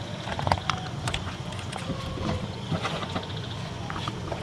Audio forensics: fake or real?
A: fake